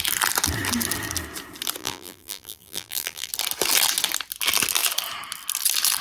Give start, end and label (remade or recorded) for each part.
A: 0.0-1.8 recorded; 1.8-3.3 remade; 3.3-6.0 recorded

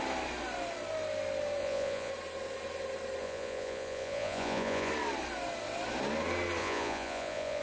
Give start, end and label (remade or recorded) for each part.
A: 0.0-1.6 recorded; 1.6-2.1 remade; 2.1-3.2 recorded; 3.2-4.9 remade; 4.9-6.6 recorded; 6.6-7.6 remade

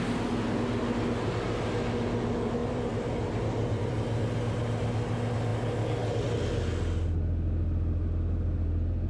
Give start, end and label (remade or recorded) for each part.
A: 0.0-2.6 recorded; 2.6-4.3 remade; 4.3-9.1 recorded

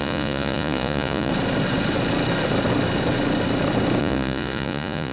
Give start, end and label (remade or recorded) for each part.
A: 0.0-1.3 remade; 1.3-4.0 recorded; 4.0-5.1 remade